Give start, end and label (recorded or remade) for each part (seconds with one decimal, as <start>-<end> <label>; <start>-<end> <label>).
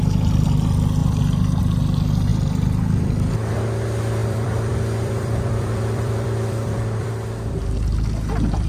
0.0-1.0 recorded; 1.0-1.6 remade; 1.6-2.3 recorded; 2.3-3.3 remade; 3.3-4.2 recorded; 4.2-7.1 remade; 7.1-8.7 recorded